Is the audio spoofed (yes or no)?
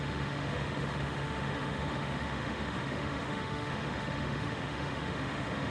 yes